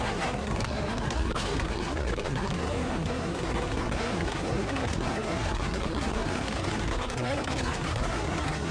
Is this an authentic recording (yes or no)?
no